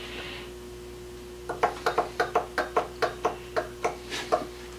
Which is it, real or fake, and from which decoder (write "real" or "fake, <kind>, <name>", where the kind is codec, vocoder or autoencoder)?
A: real